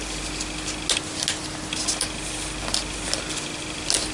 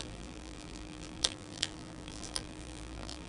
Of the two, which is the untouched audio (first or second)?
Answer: first